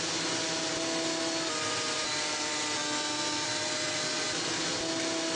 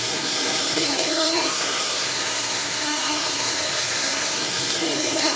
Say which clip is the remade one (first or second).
second